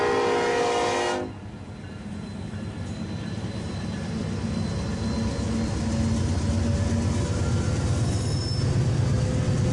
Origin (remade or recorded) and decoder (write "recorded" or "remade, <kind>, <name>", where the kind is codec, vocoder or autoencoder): recorded